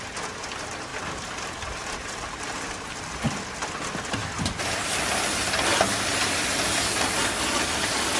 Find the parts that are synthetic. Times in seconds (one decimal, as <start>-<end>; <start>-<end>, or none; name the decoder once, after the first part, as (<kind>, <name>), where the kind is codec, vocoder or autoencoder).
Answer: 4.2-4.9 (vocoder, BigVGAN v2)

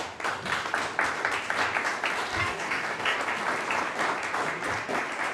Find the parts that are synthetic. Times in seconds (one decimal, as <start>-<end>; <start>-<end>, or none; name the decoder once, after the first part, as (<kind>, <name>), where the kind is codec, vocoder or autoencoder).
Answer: 2.3-3.2 (codec, DAC)

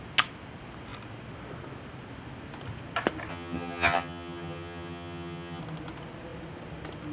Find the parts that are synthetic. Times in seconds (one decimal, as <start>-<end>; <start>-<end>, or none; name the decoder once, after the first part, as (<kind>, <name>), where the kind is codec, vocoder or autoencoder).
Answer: 3.3-5.6 (vocoder, HiFi-GAN)

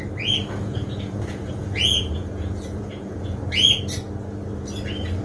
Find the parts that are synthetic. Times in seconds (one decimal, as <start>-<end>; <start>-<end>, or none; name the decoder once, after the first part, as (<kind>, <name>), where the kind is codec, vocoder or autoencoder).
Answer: 0.4-3.4 (vocoder, Vocos)

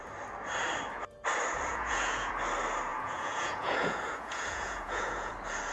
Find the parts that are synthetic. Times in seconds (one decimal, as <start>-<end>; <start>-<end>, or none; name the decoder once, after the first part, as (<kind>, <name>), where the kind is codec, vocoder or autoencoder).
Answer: 1.7-2.3 (vocoder, Vocos); 2.9-5.3

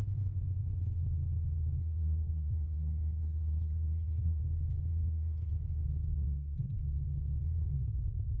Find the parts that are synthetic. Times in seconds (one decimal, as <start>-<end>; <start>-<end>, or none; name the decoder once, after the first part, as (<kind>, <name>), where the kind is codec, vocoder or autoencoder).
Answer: 1.8-4.4 (codec, SNAC); 4.9-5.5; 6.1-6.8